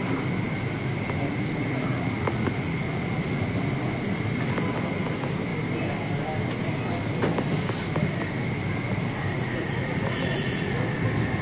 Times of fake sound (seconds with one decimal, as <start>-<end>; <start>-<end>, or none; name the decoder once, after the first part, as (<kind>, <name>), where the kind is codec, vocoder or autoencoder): 1.8-3.6 (vocoder, Vocos); 9.3-10.8